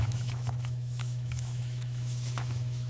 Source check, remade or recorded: remade